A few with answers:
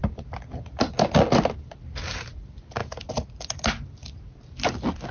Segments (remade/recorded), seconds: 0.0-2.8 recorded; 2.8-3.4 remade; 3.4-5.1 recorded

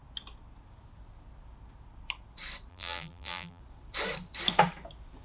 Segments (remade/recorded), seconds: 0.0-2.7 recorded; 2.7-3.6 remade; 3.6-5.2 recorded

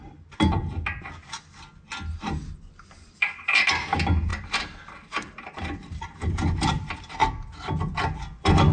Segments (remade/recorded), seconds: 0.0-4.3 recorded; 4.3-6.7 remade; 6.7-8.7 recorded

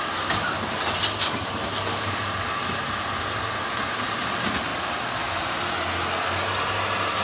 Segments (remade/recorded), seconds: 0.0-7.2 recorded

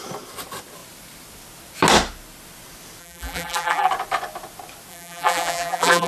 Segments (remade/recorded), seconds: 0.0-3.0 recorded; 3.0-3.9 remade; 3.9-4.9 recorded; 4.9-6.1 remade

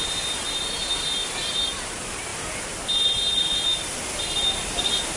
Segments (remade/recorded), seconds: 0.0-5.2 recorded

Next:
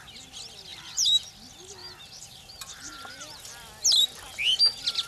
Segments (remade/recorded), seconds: 0.0-0.7 recorded; 0.7-1.3 remade; 1.3-1.8 recorded; 1.8-3.5 remade; 3.5-5.1 recorded